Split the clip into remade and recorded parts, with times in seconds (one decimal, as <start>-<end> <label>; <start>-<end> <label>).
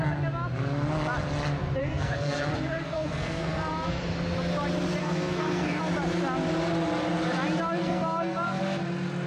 0.0-1.8 recorded; 1.8-4.0 remade; 4.0-5.0 recorded; 5.0-5.8 remade; 5.8-7.8 recorded; 7.8-8.6 remade; 8.6-9.3 recorded